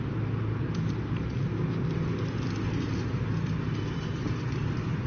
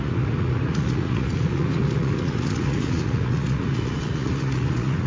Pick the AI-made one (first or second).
second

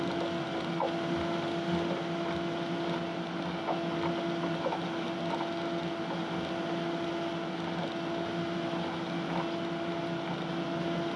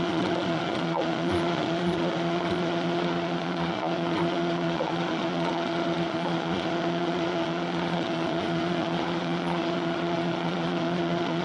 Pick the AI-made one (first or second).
second